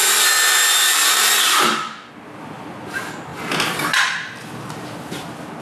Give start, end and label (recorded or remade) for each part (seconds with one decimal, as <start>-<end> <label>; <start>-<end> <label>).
0.0-2.1 remade; 2.1-5.6 recorded